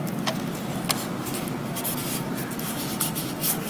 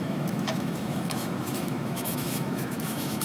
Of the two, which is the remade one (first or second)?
second